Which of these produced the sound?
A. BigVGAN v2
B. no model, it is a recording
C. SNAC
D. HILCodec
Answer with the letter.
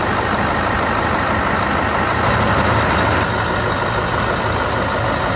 B